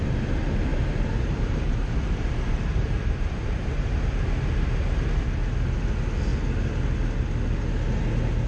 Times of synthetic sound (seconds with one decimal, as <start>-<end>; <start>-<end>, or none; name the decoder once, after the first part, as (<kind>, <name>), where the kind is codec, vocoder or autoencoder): 0.7-4.0 (vocoder, BigVGAN v2)